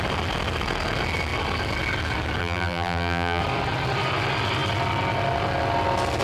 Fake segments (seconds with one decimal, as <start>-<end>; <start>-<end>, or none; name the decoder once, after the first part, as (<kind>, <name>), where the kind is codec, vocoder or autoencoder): 2.4-3.4 (vocoder, BigVGAN v2)